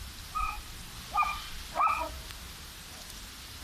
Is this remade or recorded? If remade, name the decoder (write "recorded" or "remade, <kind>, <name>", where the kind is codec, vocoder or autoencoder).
recorded